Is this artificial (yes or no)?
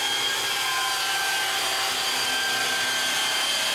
no